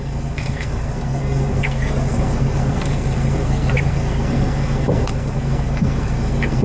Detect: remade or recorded remade